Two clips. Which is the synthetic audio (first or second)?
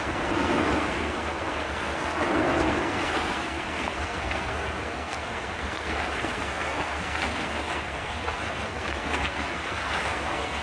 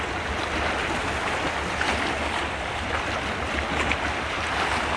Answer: first